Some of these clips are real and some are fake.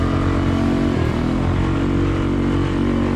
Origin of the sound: real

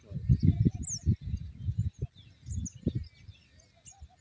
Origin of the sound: real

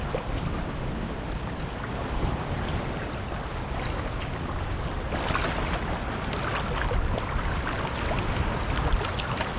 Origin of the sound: real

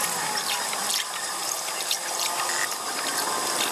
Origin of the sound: real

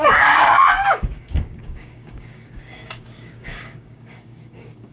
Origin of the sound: fake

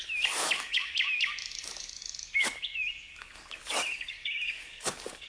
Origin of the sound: fake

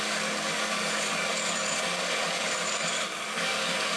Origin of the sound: fake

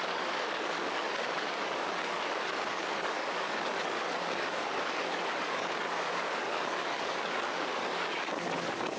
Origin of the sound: fake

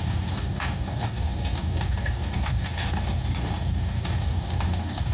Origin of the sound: fake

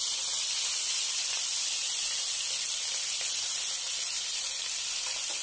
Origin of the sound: real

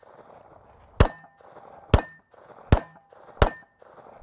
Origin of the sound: real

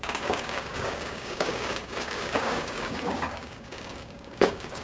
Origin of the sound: fake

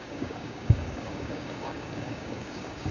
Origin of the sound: fake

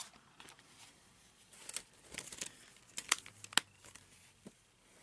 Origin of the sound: real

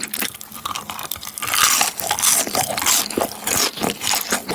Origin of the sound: real